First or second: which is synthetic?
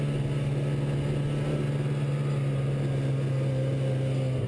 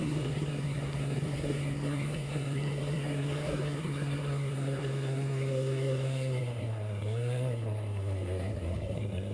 second